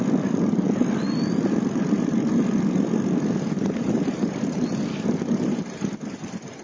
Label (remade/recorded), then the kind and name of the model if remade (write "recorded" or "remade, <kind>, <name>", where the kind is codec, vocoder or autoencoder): remade, vocoder, BigVGAN v2